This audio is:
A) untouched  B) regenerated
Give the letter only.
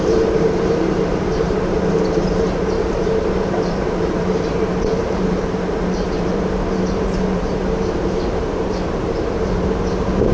B